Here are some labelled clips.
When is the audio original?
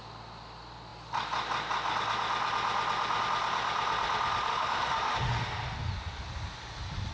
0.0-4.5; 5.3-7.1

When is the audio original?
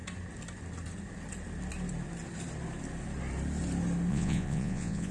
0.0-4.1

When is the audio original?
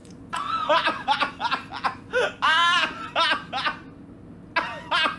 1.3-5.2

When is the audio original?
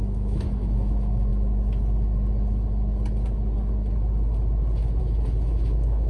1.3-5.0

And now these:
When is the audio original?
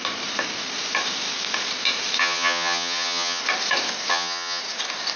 0.0-2.2; 3.4-4.1; 4.6-5.2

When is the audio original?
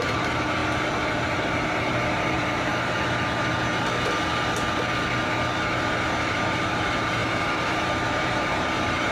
0.6-1.9; 2.7-5.7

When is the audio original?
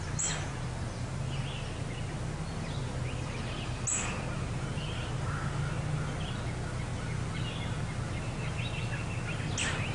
0.0-9.9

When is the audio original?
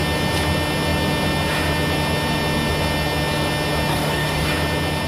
0.0-3.9; 4.5-5.1